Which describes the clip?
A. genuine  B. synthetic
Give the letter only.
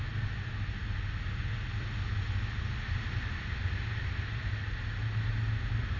A